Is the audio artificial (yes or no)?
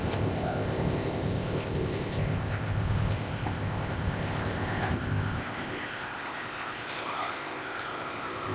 yes